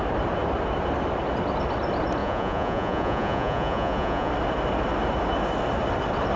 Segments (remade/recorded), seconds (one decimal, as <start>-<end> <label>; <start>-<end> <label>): 0.0-2.2 recorded; 2.2-4.3 remade; 4.3-6.4 recorded